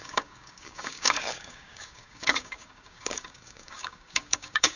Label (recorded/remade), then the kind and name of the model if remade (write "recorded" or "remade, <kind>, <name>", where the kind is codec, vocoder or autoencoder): remade, codec, DAC